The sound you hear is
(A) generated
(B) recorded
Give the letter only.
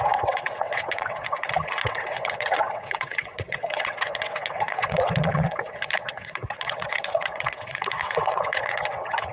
A